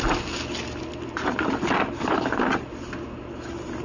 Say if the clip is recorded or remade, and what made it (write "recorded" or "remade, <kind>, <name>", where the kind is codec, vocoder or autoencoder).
recorded